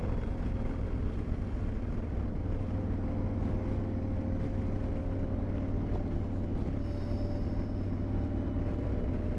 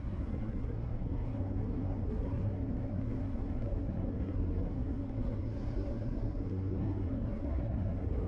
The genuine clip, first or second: first